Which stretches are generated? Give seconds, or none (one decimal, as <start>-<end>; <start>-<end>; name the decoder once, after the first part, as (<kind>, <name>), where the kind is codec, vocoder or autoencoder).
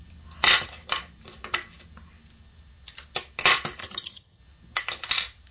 3.8-4.4 (vocoder, HiFi-GAN)